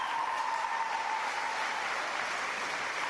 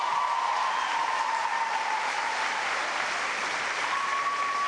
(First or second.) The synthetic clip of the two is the second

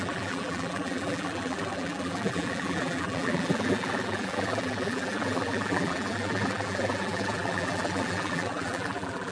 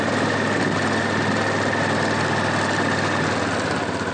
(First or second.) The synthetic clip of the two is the first